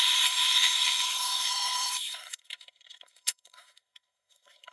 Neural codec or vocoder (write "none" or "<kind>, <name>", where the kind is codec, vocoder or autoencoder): codec, SNAC